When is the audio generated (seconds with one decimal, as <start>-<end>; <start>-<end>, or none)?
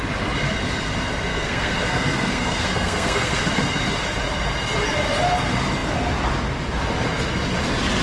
1.3-3.4